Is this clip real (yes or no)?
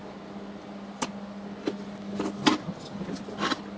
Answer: yes